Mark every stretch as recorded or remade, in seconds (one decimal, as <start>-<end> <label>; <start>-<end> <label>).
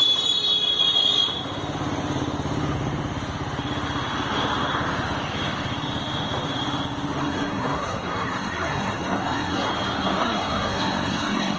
0.0-7.2 recorded; 7.2-9.7 remade; 9.7-10.2 recorded; 10.2-11.6 remade